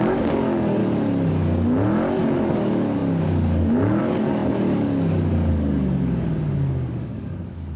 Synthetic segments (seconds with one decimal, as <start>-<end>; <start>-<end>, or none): 0.0-0.8; 2.4-7.8